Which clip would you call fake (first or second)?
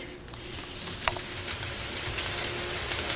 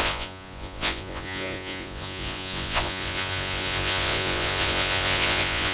second